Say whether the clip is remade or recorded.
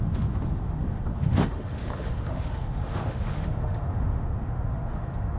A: remade